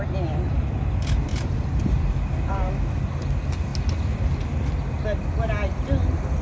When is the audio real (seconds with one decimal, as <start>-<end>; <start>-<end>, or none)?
0.0-1.3; 2.7-6.4